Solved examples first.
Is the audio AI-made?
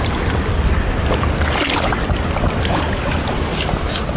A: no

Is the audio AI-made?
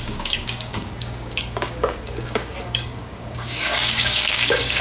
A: yes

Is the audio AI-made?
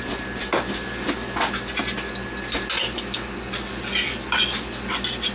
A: no